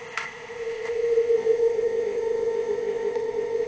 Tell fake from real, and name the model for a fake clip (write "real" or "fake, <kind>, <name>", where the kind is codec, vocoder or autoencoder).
fake, codec, ZipCodec